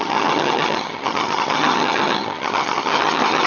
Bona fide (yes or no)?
no